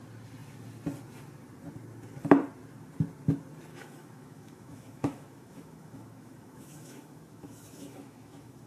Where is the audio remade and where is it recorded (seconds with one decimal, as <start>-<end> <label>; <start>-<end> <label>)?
0.0-3.7 recorded; 3.7-8.7 remade